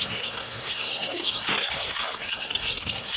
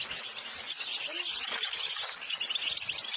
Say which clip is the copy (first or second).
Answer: first